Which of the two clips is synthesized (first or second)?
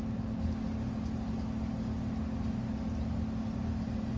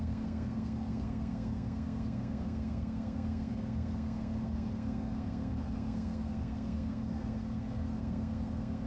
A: second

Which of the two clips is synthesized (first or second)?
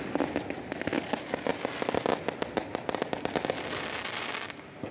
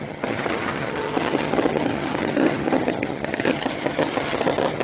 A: second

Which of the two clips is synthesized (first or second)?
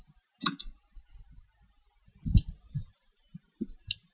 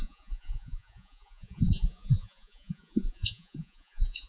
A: second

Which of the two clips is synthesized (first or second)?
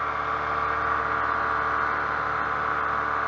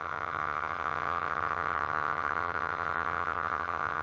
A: second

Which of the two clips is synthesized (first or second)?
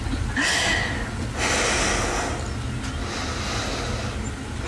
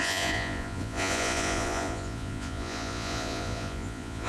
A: second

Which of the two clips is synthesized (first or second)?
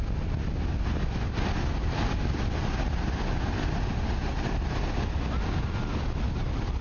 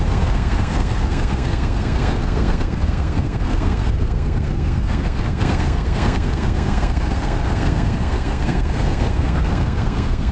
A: second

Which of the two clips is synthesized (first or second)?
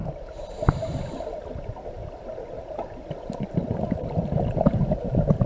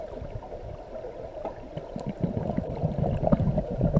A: first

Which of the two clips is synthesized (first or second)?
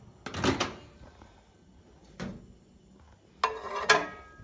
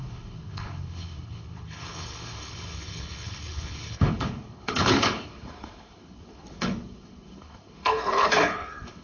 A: second